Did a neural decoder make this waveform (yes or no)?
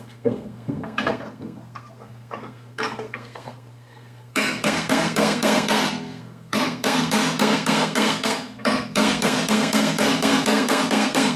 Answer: yes